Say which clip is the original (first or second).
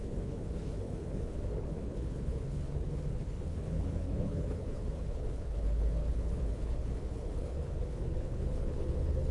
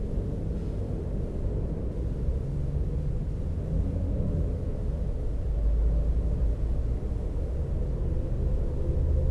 second